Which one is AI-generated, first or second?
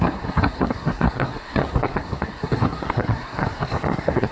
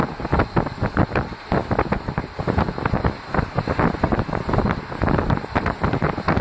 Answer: first